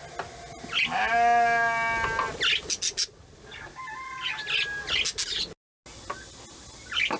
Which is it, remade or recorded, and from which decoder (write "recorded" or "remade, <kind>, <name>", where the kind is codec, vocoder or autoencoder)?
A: recorded